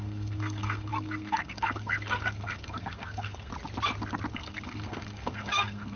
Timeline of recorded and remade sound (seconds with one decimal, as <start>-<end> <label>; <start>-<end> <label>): 0.0-3.5 remade; 3.5-4.3 recorded; 4.3-6.0 remade